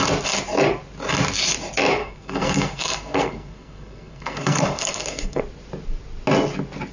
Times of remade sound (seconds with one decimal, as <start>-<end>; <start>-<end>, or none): 2.0-5.4